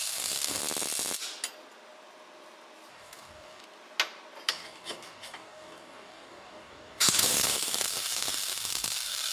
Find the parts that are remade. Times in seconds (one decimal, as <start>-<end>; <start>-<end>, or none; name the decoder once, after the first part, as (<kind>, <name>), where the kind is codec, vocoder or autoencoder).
0.0-0.6 (codec, DAC); 2.9-3.6; 4.5-9.3